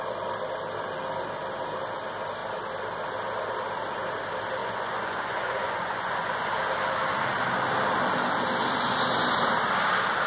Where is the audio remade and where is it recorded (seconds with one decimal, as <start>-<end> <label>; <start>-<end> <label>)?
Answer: 0.0-4.6 recorded; 4.6-6.5 remade; 6.5-10.3 recorded